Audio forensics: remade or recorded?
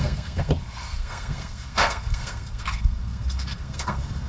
remade